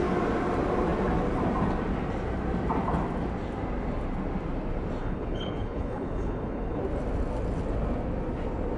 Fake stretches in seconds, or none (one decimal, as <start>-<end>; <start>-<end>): 5.0-6.8